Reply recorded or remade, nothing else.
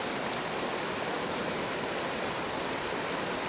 recorded